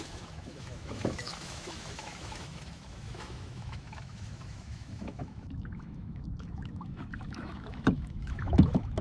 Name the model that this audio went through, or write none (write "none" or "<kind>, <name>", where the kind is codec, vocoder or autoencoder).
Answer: autoencoder, DAC-VAE